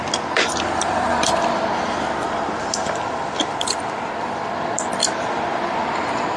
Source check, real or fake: fake